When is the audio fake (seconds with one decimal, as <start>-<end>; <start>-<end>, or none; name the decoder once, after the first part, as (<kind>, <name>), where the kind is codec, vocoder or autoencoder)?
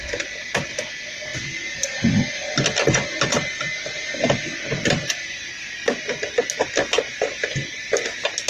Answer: none